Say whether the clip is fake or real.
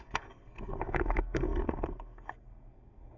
fake